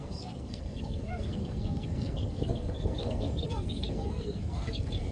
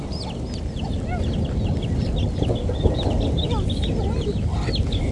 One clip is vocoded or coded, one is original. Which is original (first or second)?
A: second